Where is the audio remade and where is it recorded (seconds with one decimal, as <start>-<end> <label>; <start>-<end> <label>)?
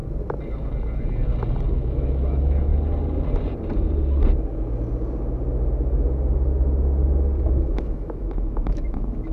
0.0-1.7 recorded; 1.7-2.7 remade; 2.7-7.5 recorded; 7.5-9.3 remade